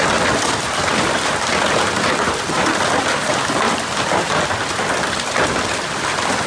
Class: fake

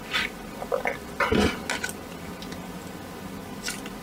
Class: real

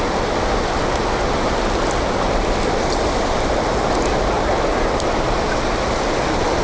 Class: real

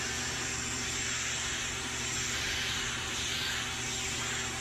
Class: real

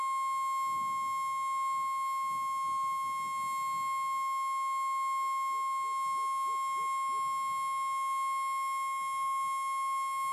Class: real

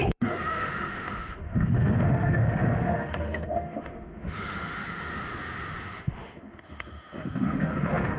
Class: fake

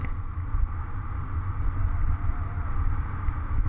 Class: real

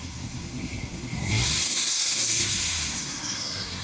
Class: fake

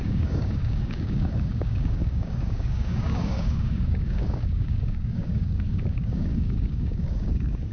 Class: fake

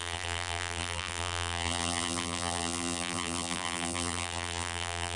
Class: fake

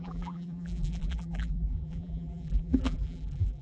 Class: fake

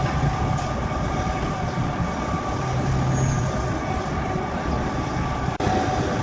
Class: real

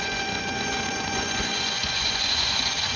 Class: fake